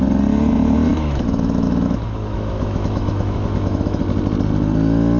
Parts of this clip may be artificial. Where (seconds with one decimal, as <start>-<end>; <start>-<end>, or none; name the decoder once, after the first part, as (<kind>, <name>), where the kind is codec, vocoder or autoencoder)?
0.9-4.0 (autoencoder, DAC-VAE)